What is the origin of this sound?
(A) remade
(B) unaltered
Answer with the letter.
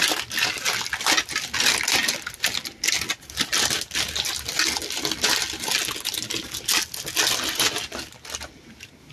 B